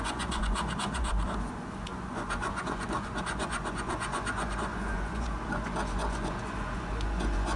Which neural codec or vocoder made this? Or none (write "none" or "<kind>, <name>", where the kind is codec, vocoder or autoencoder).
vocoder, Vocos